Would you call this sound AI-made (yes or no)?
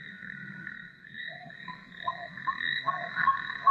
yes